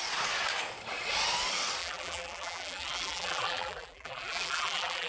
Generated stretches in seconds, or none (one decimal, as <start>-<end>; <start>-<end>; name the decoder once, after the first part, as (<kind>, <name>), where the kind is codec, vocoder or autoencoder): 1.8-5.1 (vocoder, BigVGAN v2)